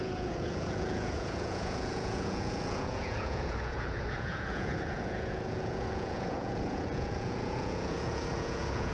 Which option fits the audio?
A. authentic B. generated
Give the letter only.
B